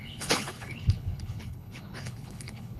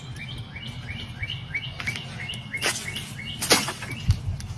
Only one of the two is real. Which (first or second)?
second